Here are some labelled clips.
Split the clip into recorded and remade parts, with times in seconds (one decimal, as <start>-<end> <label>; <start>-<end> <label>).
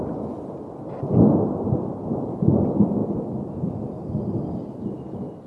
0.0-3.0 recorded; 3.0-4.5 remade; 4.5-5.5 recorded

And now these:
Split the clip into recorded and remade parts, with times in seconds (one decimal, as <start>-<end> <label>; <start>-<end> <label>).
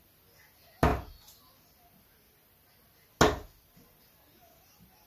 0.0-5.1 recorded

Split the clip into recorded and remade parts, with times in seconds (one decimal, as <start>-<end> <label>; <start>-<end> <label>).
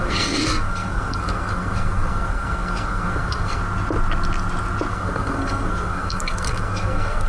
0.0-3.6 remade; 3.6-4.9 recorded; 4.9-7.3 remade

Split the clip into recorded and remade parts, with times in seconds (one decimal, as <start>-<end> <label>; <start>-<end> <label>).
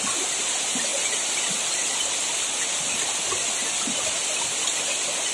0.0-5.3 recorded